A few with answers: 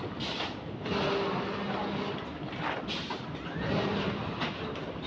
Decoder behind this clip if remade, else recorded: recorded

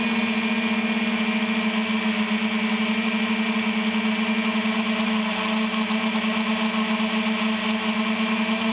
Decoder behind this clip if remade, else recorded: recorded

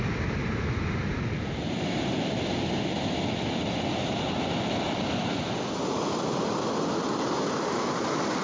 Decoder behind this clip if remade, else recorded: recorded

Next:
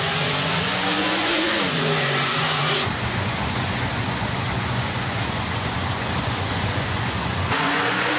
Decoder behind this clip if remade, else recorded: remade, vocoder, Vocos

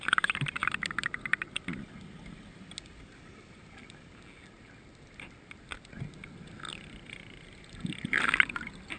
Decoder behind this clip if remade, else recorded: recorded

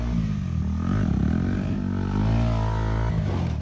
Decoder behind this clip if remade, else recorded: recorded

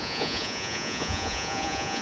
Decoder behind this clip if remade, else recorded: remade, vocoder, Vocos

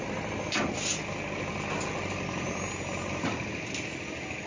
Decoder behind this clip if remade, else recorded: recorded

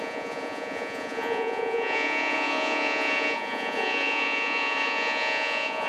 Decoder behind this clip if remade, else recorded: remade, vocoder, Vocos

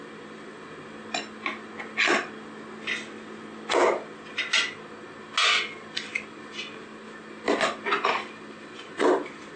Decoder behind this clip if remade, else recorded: recorded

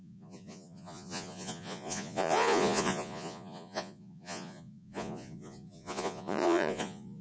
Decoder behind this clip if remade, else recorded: remade, vocoder, Vocos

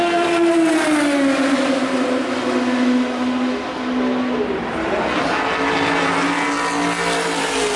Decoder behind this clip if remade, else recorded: recorded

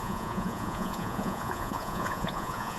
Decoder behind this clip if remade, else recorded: remade, vocoder, Vocos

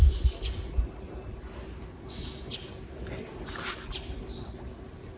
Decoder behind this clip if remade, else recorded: recorded